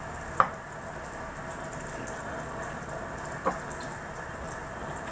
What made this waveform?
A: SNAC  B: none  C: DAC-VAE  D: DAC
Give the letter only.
B